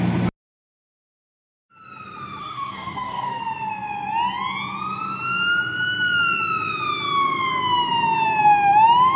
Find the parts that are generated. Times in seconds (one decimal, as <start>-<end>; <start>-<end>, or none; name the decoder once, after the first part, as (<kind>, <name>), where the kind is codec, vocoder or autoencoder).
2.4-3.4 (codec, DAC)